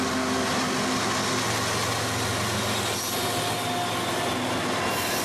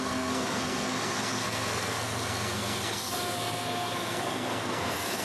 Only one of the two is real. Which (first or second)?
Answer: first